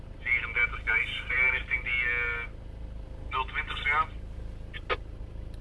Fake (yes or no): no